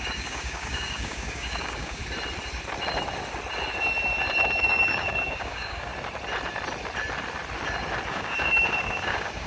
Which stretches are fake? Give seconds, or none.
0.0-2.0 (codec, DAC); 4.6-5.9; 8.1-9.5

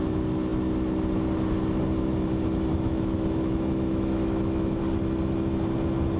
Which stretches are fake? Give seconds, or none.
2.7-4.8 (autoencoder, DAC-VAE)